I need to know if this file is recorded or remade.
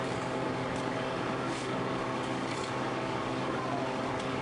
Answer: remade